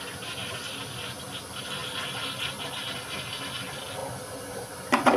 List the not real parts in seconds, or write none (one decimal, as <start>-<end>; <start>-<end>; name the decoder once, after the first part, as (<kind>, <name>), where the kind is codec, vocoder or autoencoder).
none